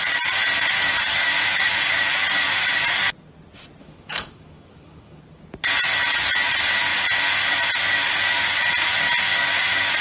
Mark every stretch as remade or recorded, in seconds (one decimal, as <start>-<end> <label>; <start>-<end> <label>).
0.0-1.1 recorded; 1.1-1.7 remade; 1.7-3.8 recorded; 3.8-5.2 remade; 5.2-10.0 recorded

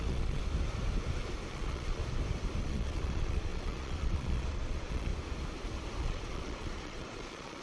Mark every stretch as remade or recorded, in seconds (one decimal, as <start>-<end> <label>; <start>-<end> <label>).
0.0-0.4 remade; 0.4-1.5 recorded; 1.5-2.0 remade; 2.0-2.6 recorded; 2.6-5.1 remade; 5.1-6.0 recorded; 6.0-7.6 remade

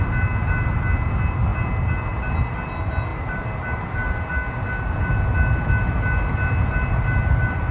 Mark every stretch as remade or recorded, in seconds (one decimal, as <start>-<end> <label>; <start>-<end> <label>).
0.0-7.7 recorded

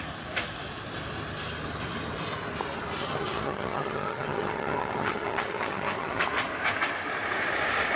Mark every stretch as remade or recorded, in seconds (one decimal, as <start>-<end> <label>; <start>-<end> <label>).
0.0-3.0 recorded; 3.0-6.2 remade; 6.2-8.0 recorded

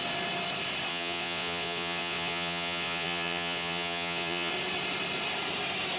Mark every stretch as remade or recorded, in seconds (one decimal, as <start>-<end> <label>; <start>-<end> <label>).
0.0-0.9 recorded; 0.9-4.5 remade; 4.5-6.0 recorded